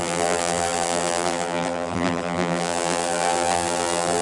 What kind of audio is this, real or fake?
fake